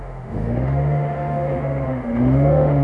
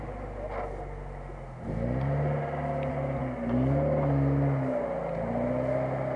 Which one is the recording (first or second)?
second